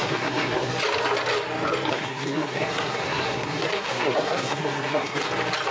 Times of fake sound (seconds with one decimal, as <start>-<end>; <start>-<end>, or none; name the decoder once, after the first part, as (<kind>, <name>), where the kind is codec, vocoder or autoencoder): 0.0-0.7 (codec, SNAC); 1.9-5.3